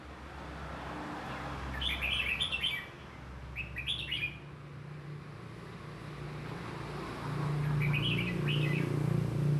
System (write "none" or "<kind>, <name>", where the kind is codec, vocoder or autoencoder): none